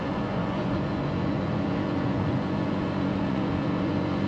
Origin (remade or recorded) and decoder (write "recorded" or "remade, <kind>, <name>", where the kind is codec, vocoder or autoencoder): remade, vocoder, Vocos